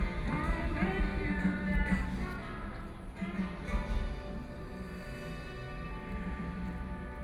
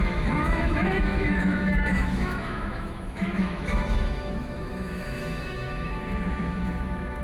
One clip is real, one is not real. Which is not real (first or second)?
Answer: second